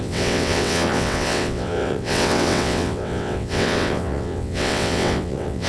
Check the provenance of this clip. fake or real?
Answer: fake